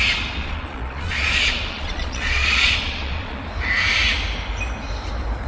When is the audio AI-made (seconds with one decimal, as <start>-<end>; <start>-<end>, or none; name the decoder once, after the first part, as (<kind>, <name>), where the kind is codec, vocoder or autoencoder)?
0.4-3.4 (vocoder, Vocos)